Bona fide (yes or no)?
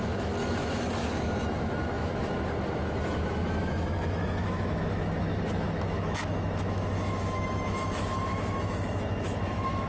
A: no